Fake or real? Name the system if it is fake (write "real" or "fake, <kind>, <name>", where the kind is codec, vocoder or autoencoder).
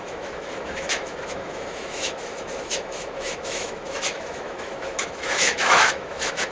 fake, autoencoder, DAC-VAE